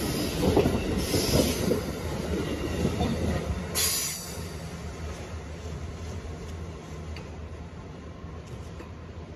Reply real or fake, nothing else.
real